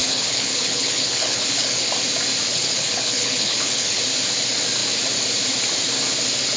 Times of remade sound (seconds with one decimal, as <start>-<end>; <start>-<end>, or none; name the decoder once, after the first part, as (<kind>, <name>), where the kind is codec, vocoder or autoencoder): 0.0-1.9 (codec, HILCodec); 2.5-4.0